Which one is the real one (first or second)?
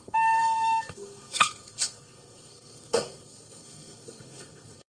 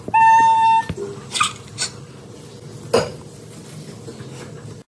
second